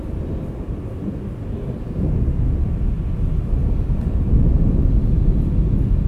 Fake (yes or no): no